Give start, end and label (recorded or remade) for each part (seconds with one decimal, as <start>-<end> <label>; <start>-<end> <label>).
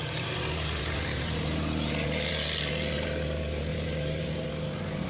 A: 0.0-2.3 remade; 2.3-3.7 recorded; 3.7-4.3 remade; 4.3-5.1 recorded